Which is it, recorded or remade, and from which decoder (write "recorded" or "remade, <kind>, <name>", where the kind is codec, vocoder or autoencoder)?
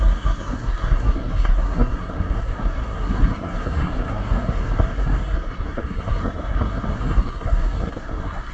remade, codec, SNAC